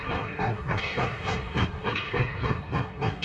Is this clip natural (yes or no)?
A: no